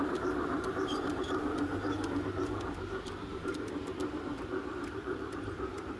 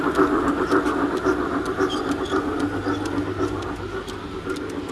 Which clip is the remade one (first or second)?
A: first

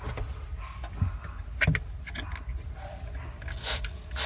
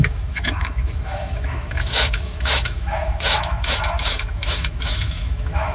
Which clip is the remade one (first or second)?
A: second